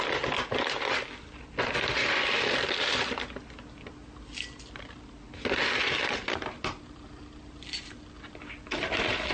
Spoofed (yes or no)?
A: no